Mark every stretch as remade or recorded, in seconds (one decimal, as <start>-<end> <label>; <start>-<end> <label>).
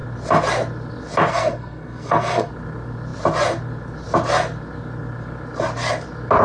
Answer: 0.0-1.3 recorded; 1.3-2.5 remade; 2.5-6.4 recorded